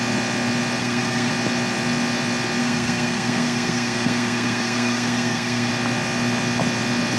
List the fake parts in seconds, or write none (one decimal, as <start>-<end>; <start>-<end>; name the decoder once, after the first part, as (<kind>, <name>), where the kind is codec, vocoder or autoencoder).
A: 0.8-1.3 (codec, SNAC); 2.6-5.7

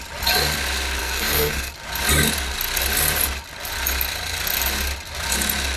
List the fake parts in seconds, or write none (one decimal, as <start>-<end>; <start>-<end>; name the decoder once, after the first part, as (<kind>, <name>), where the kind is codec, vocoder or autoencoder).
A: 1.0-1.7 (codec, SNAC)

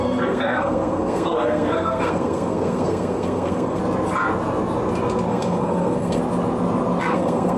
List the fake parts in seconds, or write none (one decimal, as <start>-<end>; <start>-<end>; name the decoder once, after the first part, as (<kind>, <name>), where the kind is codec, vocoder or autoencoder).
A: 0.0-3.8 (codec, SNAC); 5.3-6.2; 7.0-7.6